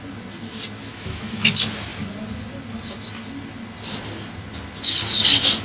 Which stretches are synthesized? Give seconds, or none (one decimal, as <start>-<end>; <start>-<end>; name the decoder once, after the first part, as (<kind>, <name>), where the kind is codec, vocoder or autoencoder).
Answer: 0.9-1.5 (autoencoder, DAC-VAE)